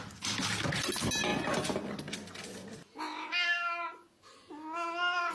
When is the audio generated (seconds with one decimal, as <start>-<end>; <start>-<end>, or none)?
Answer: none